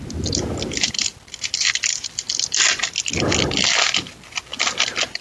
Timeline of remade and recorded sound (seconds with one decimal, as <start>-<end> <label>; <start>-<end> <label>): 0.0-5.2 recorded